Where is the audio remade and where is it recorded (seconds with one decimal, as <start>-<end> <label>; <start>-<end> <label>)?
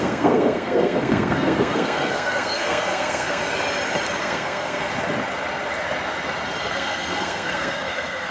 0.0-3.4 remade; 3.4-4.2 recorded; 4.2-4.9 remade; 4.9-6.6 recorded; 6.6-8.3 remade